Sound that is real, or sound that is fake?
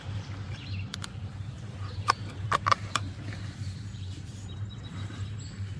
fake